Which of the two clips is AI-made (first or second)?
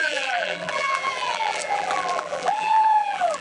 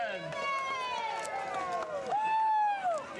first